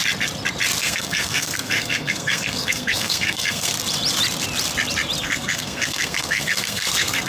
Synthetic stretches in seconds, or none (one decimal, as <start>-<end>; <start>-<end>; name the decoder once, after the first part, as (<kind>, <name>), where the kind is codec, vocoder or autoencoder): 0.8-3.7 (codec, SNAC); 5.2-7.3